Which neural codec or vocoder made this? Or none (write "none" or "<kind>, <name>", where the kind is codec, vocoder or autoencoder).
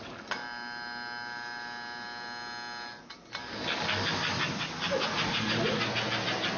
none